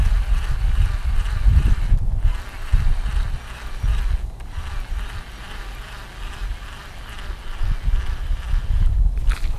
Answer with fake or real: real